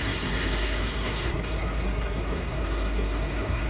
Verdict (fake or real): fake